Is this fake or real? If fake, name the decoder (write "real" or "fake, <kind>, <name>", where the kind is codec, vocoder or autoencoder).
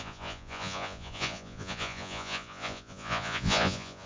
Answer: fake, vocoder, Vocos